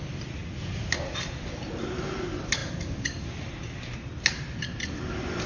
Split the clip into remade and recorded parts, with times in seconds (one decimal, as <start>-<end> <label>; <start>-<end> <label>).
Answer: 0.0-5.5 recorded